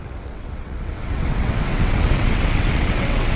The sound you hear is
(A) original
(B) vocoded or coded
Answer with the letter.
B